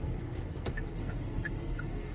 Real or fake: fake